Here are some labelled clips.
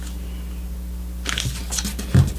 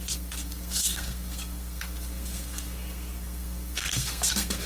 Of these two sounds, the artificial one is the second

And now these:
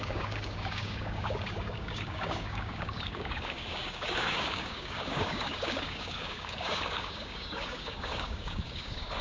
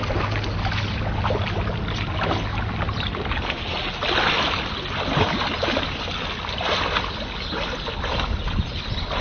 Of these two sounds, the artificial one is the first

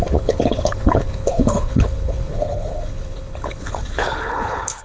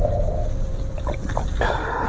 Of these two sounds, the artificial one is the first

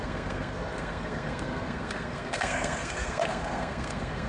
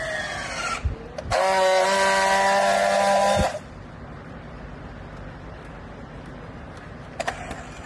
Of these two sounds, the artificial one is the first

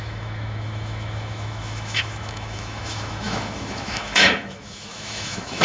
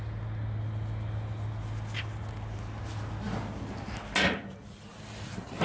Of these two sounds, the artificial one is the first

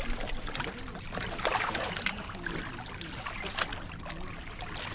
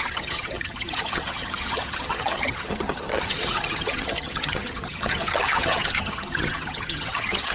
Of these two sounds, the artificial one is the second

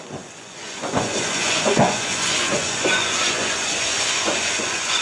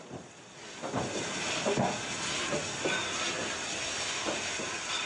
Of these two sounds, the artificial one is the first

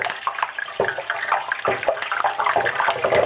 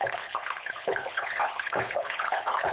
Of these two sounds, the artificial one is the second